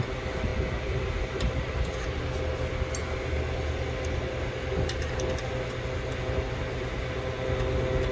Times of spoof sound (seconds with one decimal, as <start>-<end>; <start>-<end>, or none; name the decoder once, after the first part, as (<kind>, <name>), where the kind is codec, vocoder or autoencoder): none